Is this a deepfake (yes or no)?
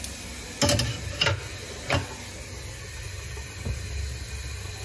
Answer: no